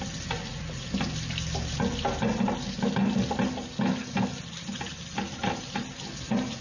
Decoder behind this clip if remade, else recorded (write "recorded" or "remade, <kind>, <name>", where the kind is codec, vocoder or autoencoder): recorded